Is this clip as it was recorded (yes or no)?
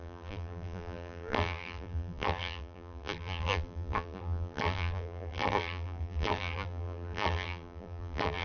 no